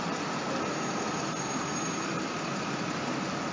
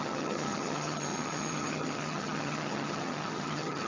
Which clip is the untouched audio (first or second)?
first